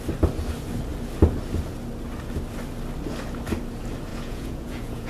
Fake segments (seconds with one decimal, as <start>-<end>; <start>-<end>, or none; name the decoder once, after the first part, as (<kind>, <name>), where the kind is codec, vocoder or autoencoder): 4.1-5.1 (vocoder, Vocos)